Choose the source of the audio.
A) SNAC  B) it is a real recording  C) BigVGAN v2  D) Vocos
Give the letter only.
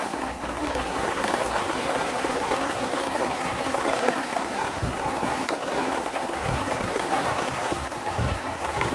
A